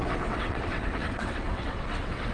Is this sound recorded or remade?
remade